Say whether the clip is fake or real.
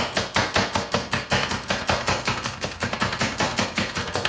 fake